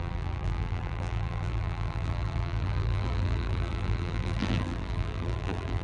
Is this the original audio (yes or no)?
no